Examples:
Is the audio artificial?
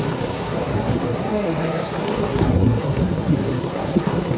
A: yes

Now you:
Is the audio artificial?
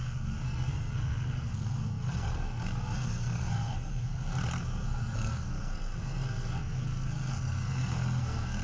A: yes